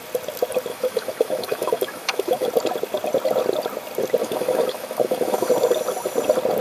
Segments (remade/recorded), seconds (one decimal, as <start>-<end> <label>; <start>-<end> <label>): 0.0-0.7 recorded; 0.7-2.5 remade; 2.5-4.2 recorded; 4.2-5.5 remade; 5.5-6.6 recorded